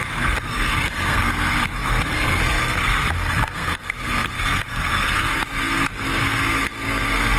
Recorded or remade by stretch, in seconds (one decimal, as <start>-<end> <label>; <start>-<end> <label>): 0.0-7.4 remade